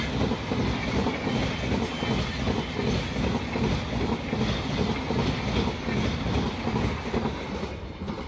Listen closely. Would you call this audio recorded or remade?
recorded